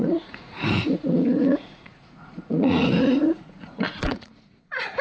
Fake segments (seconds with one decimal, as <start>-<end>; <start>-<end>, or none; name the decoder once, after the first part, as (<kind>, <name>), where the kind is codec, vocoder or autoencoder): 0.0-5.0 (vocoder, Vocos)